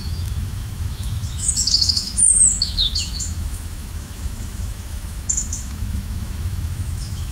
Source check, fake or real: fake